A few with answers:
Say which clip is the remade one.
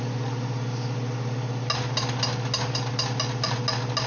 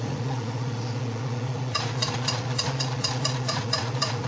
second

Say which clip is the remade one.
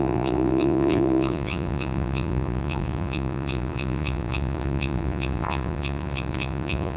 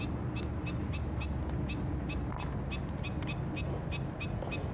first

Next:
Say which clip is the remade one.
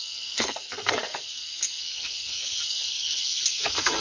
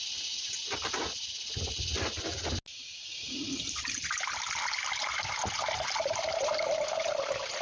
first